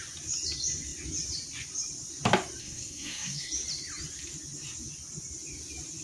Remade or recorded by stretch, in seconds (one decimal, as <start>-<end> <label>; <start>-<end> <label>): 0.0-2.6 recorded; 2.6-3.5 remade; 3.5-6.0 recorded